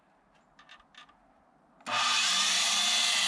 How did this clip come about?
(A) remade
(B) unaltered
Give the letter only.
B